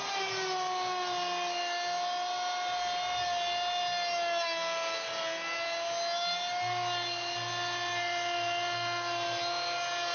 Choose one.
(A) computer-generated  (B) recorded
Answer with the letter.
B